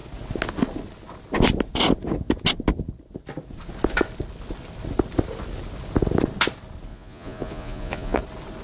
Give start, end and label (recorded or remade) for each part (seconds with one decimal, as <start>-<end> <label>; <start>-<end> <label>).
0.0-6.9 recorded; 6.9-8.2 remade; 8.2-8.6 recorded